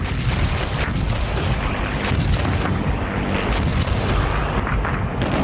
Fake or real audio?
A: real